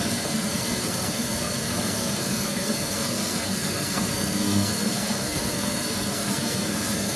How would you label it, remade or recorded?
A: remade